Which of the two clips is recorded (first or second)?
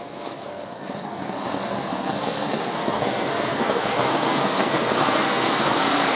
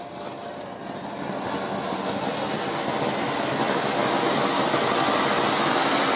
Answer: second